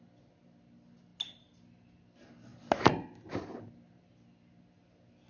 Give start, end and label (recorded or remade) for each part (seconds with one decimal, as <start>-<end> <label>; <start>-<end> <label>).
0.0-5.3 recorded